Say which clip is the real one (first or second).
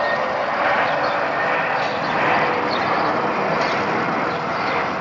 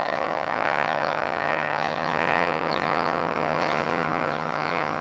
first